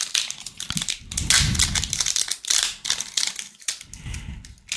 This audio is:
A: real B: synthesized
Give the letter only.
A